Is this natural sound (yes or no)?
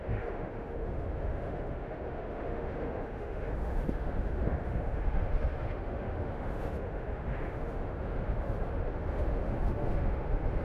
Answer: no